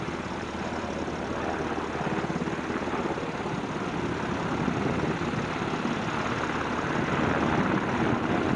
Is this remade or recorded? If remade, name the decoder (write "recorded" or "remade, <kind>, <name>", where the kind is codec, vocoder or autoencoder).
recorded